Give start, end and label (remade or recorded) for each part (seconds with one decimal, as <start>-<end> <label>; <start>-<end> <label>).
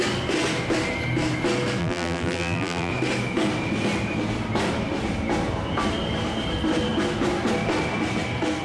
0.0-1.8 recorded; 1.8-2.9 remade; 2.9-8.6 recorded